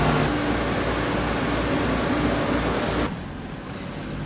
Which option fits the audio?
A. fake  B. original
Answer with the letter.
B